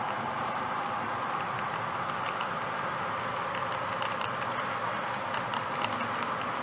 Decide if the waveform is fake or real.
real